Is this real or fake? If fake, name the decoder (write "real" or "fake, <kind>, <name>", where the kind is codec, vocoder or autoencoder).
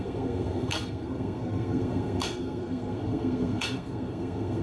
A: fake, codec, SNAC